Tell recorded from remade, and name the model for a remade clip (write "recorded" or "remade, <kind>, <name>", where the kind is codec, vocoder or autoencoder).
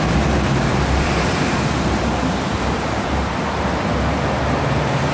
remade, vocoder, BigVGAN v2